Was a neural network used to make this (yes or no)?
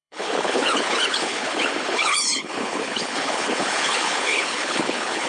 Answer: yes